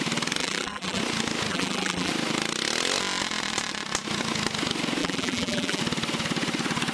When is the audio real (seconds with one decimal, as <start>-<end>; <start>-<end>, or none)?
0.0-0.4; 1.0-1.5; 2.1-5.0; 5.8-6.9